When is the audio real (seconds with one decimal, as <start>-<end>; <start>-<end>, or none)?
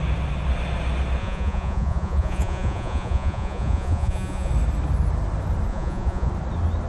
0.0-1.2; 4.5-5.7; 6.3-6.9